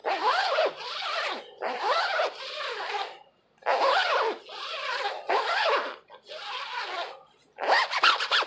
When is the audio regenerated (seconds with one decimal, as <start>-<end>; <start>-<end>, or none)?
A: 0.0-1.4